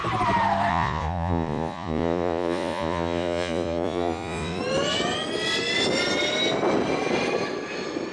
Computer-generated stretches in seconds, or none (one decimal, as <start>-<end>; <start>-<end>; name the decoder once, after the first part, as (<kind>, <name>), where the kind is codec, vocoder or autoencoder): 0.7-4.6 (vocoder, Vocos)